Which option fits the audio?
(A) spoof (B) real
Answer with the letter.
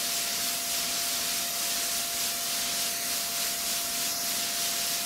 B